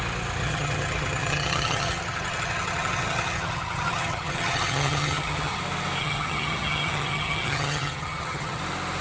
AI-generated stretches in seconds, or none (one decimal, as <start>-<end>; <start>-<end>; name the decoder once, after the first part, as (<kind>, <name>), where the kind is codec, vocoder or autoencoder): 0.4-5.6 (vocoder, HiFi-GAN); 6.0-8.6